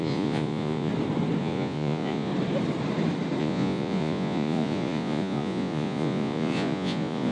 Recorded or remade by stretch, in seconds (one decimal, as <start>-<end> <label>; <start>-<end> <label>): 0.0-0.9 remade; 0.9-1.4 recorded; 1.4-2.3 remade; 2.3-3.4 recorded; 3.4-7.3 remade